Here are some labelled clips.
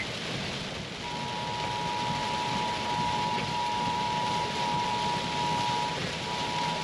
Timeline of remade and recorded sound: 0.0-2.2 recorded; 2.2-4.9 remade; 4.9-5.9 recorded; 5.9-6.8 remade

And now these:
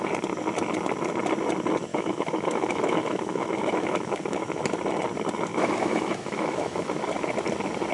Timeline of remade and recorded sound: 0.0-1.9 recorded; 1.9-4.6 remade; 4.6-5.5 recorded; 5.5-6.9 remade; 6.9-7.9 recorded

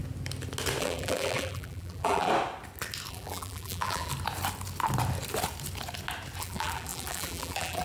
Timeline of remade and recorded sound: 0.0-0.8 recorded; 0.8-2.3 remade; 2.3-3.1 recorded; 3.1-4.1 remade; 4.1-6.4 recorded; 6.4-7.8 remade

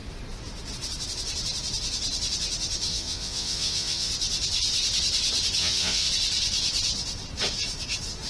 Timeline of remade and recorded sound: 0.0-2.9 recorded; 2.9-4.1 remade; 4.1-5.6 recorded; 5.6-6.1 remade; 6.1-8.3 recorded

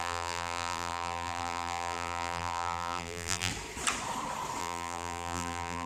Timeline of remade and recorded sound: 0.0-3.5 remade; 3.5-4.6 recorded; 4.6-5.9 remade

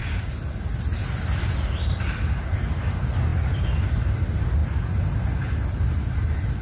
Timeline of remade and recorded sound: 0.0-6.6 recorded

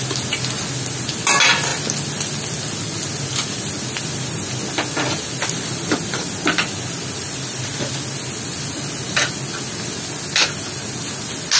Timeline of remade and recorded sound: 0.0-11.6 recorded

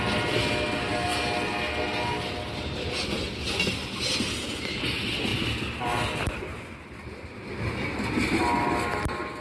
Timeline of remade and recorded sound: 0.0-9.4 recorded